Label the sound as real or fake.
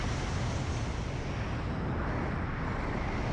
real